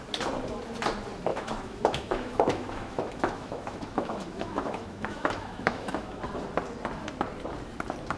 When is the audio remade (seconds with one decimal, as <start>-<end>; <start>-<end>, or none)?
1.3-6.2